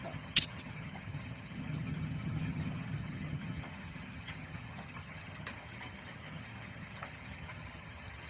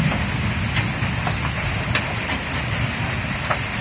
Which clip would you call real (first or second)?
second